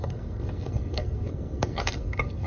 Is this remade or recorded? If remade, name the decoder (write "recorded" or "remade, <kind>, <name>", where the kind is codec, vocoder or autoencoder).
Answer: remade, codec, SNAC